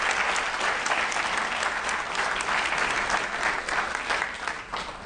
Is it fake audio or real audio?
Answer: real